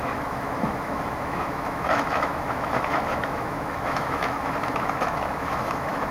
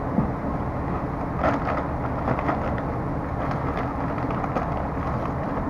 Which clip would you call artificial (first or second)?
first